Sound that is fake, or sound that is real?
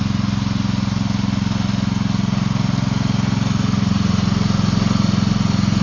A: real